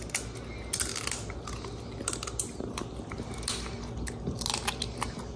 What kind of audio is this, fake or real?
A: real